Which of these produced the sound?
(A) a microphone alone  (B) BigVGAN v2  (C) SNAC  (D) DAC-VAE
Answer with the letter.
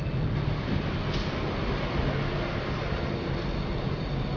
A